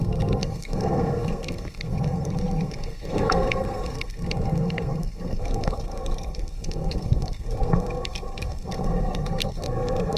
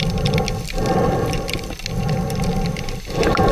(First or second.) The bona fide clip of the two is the second